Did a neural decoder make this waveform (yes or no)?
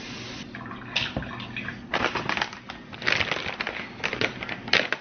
no